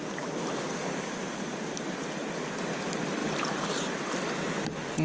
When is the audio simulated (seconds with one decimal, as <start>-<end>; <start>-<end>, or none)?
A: 0.8-2.2; 3.2-3.9